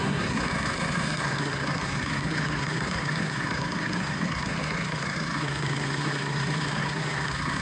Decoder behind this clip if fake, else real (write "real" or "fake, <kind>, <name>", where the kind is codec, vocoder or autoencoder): fake, codec, SNAC